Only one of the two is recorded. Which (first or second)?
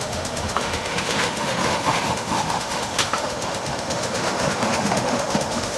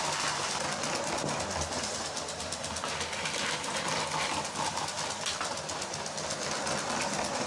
second